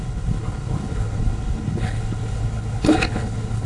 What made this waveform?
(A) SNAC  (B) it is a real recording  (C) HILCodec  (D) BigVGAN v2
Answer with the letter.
C